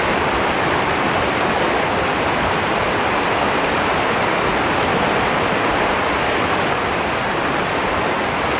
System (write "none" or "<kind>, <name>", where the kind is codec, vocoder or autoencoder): none